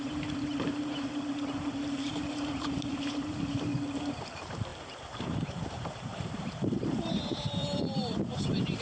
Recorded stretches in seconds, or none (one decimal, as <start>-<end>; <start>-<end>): 3.7-4.3